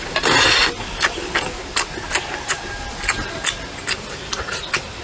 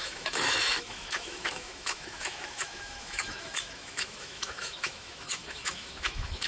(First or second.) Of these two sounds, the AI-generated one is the second